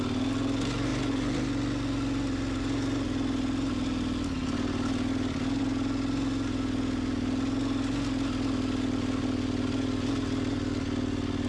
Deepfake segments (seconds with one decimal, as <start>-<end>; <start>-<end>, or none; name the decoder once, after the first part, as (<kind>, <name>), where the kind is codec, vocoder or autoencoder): none